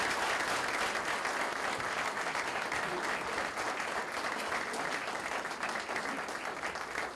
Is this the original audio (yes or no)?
yes